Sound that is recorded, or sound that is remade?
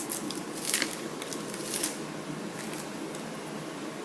recorded